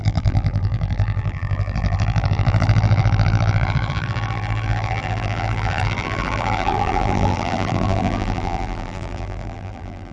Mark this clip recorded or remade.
remade